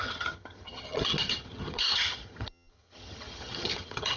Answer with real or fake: fake